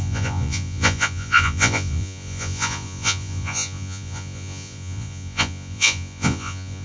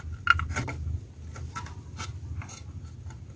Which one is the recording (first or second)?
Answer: second